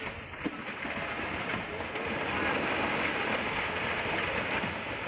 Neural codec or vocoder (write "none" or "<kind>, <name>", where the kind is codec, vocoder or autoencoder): none